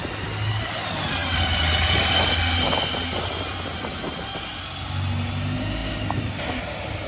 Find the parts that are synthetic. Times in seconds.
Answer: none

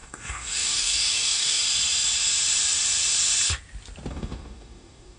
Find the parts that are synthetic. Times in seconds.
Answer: 0.0-1.6 (codec, DAC); 4.1-5.2

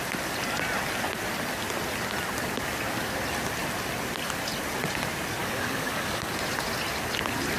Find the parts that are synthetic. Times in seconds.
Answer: 5.4-6.3 (codec, DAC)